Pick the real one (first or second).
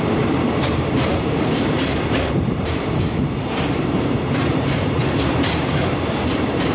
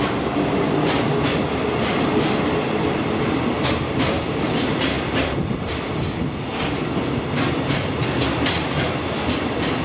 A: second